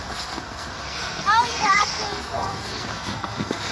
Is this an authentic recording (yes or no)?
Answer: no